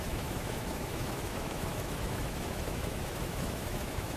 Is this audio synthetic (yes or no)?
yes